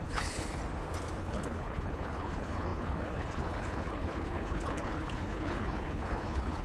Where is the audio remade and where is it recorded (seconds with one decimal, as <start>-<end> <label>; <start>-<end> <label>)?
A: 0.0-0.6 remade; 0.6-1.2 recorded; 1.2-6.6 remade